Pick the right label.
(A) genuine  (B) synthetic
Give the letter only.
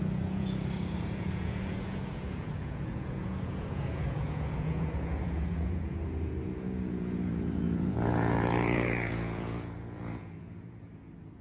B